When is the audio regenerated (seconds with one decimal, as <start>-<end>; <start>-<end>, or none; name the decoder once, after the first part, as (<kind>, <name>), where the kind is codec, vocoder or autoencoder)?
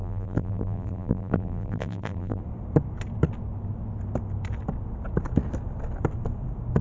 0.0-2.4 (vocoder, BigVGAN v2)